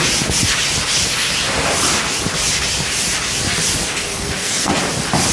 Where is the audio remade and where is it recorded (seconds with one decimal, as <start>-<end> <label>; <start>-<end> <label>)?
0.0-3.9 recorded; 3.9-4.7 remade; 4.7-5.3 recorded